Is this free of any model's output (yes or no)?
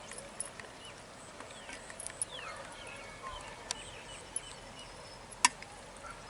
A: yes